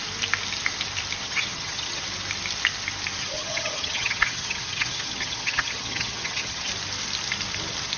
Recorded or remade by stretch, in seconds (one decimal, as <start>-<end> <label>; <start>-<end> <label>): 0.0-1.2 recorded; 1.2-2.0 remade; 2.0-3.2 recorded; 3.2-6.7 remade; 6.7-8.0 recorded